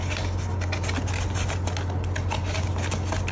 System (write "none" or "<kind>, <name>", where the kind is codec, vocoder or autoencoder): none